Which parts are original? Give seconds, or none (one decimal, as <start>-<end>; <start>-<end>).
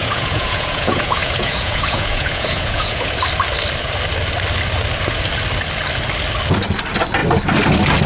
3.2-8.1